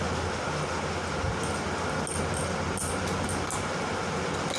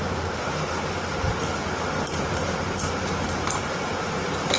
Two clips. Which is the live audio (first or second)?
first